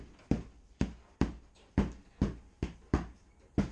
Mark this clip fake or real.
real